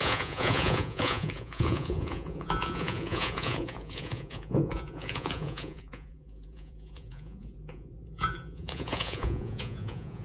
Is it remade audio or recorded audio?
remade